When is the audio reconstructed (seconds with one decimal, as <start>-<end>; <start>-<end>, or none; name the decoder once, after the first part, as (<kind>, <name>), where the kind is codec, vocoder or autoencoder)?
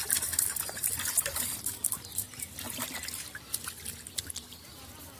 0.0-2.5 (vocoder, BigVGAN v2)